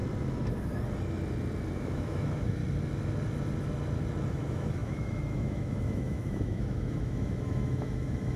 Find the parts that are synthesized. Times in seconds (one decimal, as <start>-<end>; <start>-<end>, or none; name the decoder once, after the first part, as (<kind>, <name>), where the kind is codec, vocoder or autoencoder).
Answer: 1.8-2.6 (autoencoder, DAC-VAE); 4.3-8.4